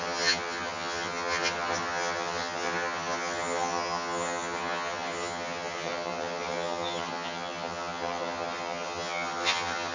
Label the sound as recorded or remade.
remade